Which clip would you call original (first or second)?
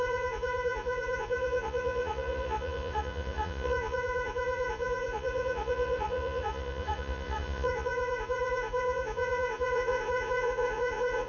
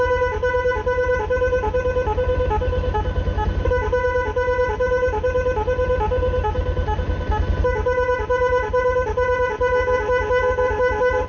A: second